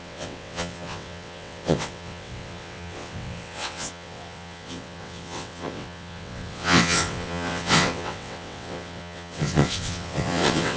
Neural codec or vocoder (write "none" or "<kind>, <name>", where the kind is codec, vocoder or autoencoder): vocoder, WaveNeXt